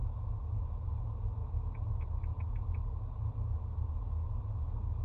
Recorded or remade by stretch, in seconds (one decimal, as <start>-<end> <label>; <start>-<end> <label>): 0.0-5.0 recorded